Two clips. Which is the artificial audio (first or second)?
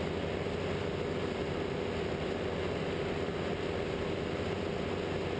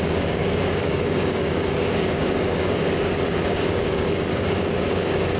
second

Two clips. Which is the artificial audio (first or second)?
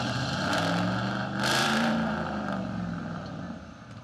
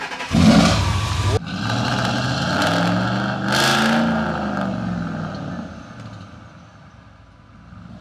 first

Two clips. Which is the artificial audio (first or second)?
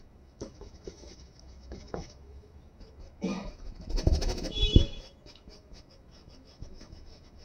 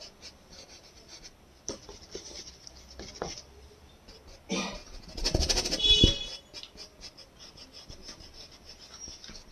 first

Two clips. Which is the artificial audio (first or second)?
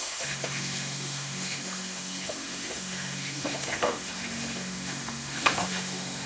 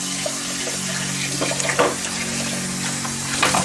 first